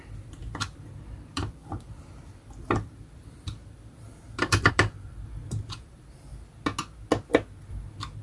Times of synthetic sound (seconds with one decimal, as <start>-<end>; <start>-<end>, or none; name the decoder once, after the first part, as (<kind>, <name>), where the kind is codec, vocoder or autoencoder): 0.0-0.4 (vocoder, BigVGAN v2); 0.9-6.3; 7.7-8.2